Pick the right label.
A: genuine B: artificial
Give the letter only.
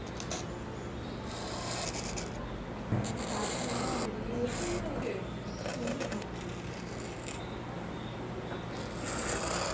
A